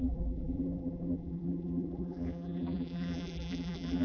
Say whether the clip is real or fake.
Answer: fake